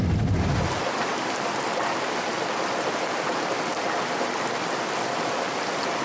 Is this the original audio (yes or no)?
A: yes